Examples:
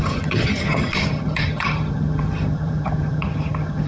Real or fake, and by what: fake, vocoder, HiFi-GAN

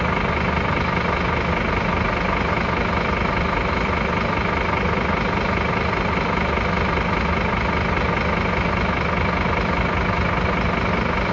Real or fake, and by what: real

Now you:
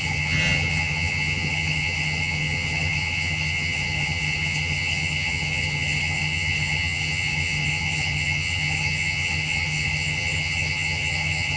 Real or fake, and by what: fake, vocoder, HiFi-GAN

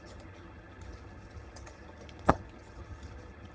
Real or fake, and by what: fake, vocoder, HiFi-GAN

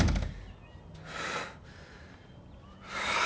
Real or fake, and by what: real